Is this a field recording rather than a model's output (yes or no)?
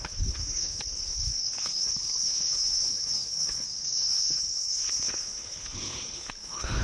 no